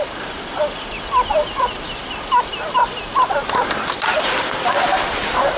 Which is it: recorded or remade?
recorded